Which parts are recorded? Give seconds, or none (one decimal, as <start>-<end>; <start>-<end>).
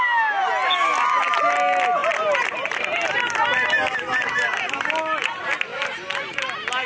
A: 0.0-6.9